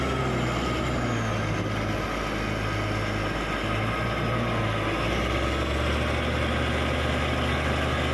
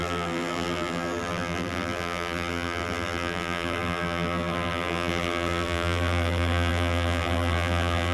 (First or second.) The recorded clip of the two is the first